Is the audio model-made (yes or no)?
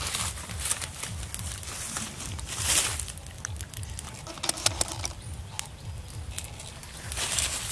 no